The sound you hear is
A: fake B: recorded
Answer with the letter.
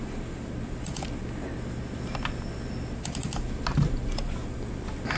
B